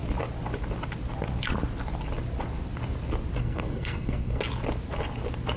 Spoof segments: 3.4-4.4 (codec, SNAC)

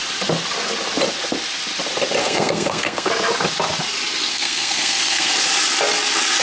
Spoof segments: 2.2-3.1 (codec, SNAC); 4.3-5.3

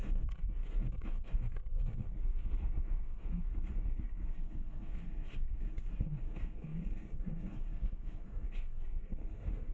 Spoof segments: 0.0-9.7 (codec, SNAC)

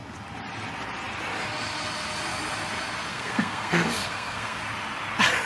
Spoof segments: 3.1-4.6 (codec, SNAC)

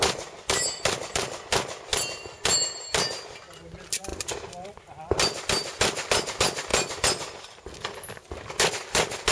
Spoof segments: none